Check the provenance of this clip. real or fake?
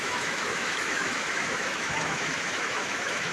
fake